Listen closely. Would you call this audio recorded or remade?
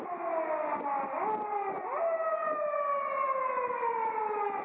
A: recorded